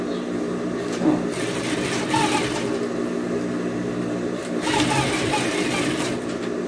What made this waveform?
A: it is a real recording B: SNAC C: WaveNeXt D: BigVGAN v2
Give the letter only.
A